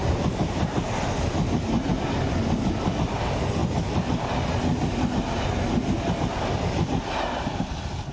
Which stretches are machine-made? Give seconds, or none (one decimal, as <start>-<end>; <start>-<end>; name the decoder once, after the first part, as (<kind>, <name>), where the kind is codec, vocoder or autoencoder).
none